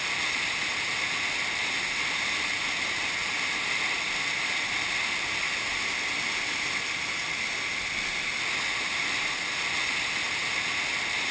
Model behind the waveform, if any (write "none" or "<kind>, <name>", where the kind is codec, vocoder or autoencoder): none